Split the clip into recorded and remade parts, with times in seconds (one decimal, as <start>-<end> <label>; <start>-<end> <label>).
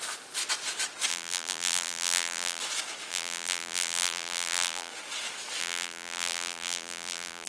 0.0-1.1 recorded; 1.1-2.6 remade; 2.6-3.1 recorded; 3.1-4.9 remade; 4.9-5.6 recorded; 5.6-7.5 remade